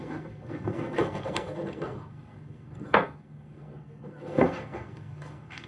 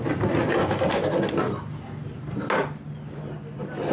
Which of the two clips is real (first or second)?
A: second